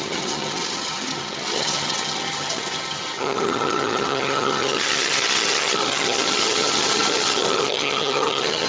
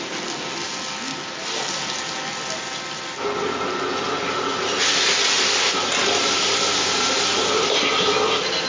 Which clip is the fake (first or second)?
first